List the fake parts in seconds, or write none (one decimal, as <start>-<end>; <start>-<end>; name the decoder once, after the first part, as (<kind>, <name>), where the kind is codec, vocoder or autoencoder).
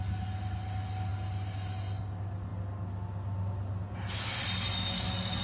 none